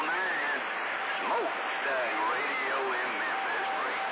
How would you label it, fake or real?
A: real